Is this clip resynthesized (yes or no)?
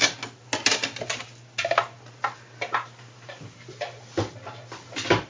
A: no